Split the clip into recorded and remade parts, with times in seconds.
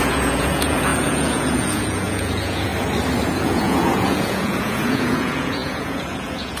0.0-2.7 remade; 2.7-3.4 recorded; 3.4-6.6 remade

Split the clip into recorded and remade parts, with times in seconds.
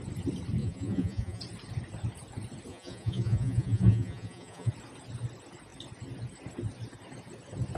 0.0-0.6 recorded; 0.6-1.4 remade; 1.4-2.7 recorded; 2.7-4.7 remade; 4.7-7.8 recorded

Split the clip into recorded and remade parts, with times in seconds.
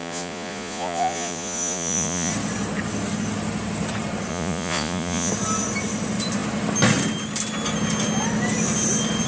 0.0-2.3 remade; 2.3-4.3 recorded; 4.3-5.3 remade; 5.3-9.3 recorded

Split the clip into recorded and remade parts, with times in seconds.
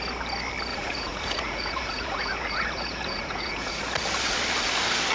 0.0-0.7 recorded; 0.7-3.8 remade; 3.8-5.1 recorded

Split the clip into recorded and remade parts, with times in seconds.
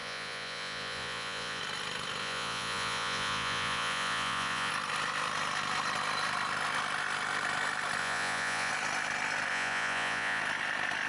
0.0-1.6 remade; 1.6-2.2 recorded; 2.2-4.7 remade; 4.7-8.0 recorded; 8.0-8.7 remade; 8.7-9.5 recorded; 9.5-10.4 remade; 10.4-11.1 recorded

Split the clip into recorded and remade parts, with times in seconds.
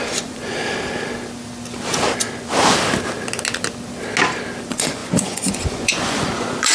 0.0-0.6 remade; 0.6-4.6 recorded; 4.6-6.7 remade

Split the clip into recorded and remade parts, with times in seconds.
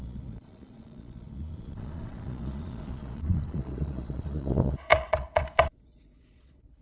0.0-6.8 remade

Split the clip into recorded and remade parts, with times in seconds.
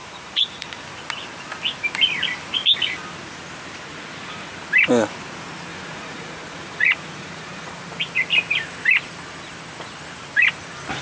0.0-0.8 remade; 0.8-3.9 recorded; 3.9-4.6 remade; 4.6-5.7 recorded; 5.7-7.7 remade; 7.7-11.0 recorded